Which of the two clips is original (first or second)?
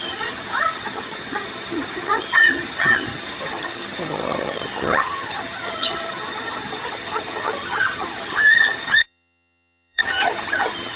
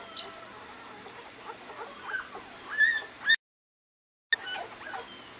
second